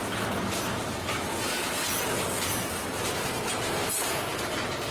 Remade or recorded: recorded